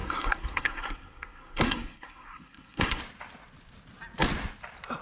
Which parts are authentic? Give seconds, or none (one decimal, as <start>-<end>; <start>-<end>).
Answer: 3.0-5.0